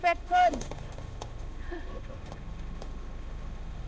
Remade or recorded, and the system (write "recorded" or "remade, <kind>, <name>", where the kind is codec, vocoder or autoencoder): remade, autoencoder, DAC-VAE